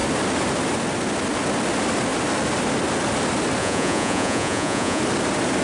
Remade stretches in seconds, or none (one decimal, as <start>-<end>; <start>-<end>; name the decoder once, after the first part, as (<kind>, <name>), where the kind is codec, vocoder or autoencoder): 3.6-5.0 (vocoder, Vocos)